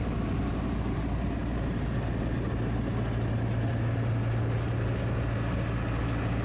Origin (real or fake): real